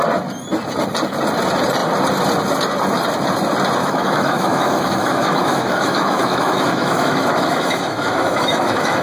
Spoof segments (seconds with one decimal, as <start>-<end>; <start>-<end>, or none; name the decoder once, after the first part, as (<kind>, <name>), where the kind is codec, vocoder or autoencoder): 3.8-9.0 (autoencoder, DAC-VAE)